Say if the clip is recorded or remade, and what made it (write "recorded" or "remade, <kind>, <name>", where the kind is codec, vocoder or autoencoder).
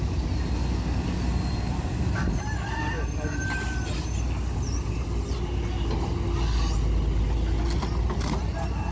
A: recorded